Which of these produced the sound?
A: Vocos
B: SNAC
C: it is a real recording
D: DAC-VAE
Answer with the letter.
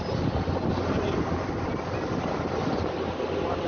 C